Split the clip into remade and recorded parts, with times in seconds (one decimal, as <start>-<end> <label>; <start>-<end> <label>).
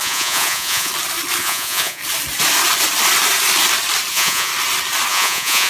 0.0-0.9 remade; 0.9-1.4 recorded; 1.4-2.0 remade; 2.0-4.1 recorded; 4.1-4.5 remade; 4.5-5.1 recorded; 5.1-5.7 remade